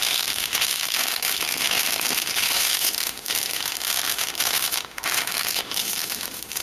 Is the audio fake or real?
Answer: fake